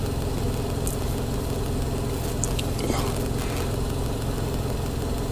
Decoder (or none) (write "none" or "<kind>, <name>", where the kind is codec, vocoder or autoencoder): none